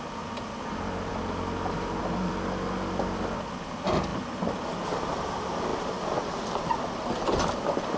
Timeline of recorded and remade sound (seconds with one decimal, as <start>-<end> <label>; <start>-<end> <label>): 0.0-8.0 recorded